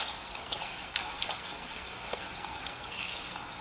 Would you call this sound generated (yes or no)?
yes